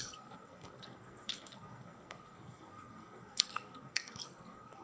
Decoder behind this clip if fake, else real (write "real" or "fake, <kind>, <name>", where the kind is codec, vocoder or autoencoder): fake, codec, SNAC